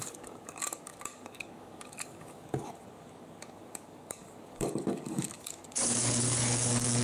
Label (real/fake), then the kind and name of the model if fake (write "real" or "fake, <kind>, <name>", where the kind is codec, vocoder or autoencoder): fake, codec, DAC